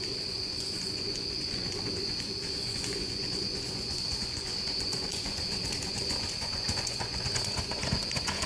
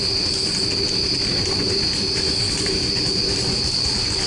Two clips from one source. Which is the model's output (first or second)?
first